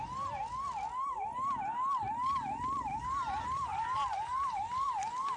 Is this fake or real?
real